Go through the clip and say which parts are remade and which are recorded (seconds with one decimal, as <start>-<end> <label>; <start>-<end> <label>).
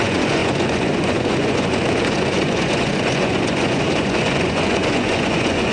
0.0-5.7 remade